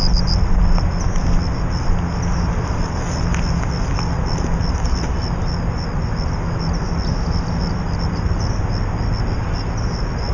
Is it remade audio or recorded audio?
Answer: recorded